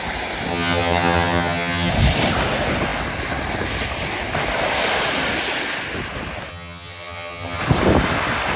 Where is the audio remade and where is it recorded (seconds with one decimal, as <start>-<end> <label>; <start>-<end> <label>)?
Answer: 0.0-0.5 recorded; 0.5-1.9 remade; 1.9-6.5 recorded; 6.5-7.6 remade; 7.6-8.6 recorded